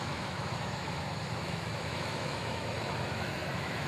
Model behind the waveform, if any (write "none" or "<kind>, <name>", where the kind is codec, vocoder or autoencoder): autoencoder, DAC-VAE